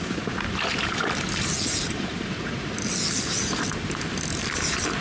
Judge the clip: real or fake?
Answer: fake